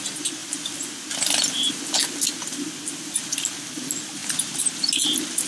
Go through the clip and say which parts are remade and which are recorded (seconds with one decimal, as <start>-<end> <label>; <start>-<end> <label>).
0.0-5.5 recorded